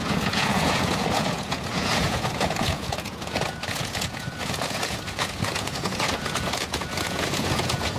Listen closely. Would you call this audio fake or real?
fake